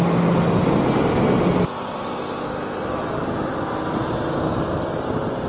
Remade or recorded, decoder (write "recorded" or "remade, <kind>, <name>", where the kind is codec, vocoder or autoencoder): recorded